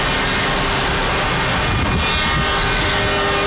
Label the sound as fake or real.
real